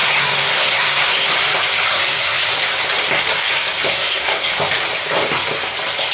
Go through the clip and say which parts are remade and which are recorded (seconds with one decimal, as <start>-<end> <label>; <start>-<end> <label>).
0.0-1.3 remade; 1.3-1.9 recorded; 1.9-2.5 remade; 2.5-3.9 recorded; 3.9-4.5 remade; 4.5-6.1 recorded